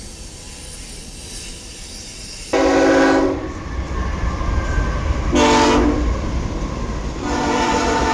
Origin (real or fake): real